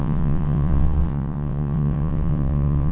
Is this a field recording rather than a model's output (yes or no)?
no